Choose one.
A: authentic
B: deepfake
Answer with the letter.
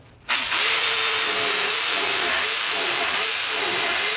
B